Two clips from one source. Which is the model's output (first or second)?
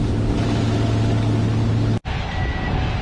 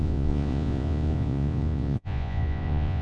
second